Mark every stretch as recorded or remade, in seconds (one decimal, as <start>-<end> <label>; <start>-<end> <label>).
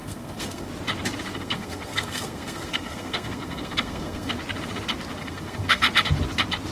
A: 0.0-0.7 remade; 0.7-1.3 recorded; 1.3-4.3 remade; 4.3-5.2 recorded; 5.2-5.8 remade; 5.8-6.7 recorded